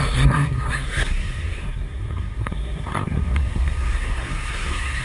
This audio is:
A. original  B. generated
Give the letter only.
B